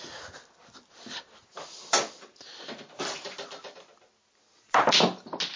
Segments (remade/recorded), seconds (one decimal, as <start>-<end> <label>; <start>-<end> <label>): 0.0-5.6 recorded